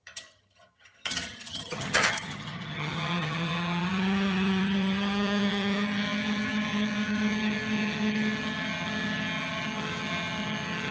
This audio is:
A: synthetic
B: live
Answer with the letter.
A